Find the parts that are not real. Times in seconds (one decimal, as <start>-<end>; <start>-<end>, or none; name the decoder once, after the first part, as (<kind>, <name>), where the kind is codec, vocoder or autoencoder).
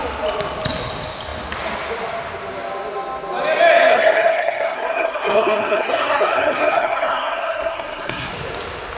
3.9-8.3 (codec, SNAC)